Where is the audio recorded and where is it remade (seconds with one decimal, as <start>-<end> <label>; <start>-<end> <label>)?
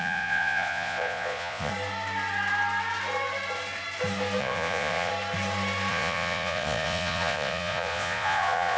0.0-1.7 remade; 1.7-4.4 recorded; 4.4-5.1 remade; 5.1-5.9 recorded; 5.9-8.8 remade